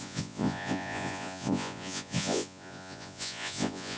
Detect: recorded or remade remade